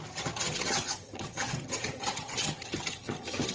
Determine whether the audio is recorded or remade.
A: remade